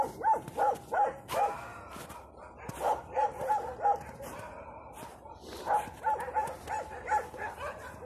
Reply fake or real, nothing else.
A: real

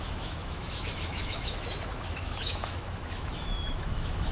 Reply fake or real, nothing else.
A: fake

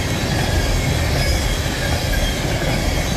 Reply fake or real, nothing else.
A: real